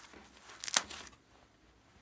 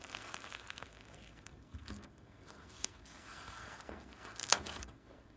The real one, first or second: first